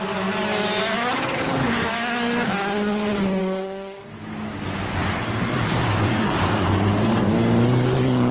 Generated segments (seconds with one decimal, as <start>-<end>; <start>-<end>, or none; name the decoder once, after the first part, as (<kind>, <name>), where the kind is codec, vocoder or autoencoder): 3.4-4.0 (codec, SNAC)